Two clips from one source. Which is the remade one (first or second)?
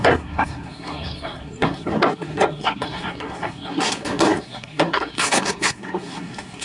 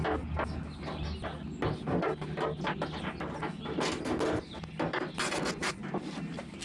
first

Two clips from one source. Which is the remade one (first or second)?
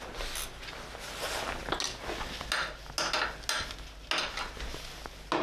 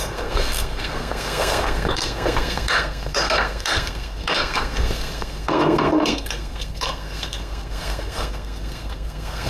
second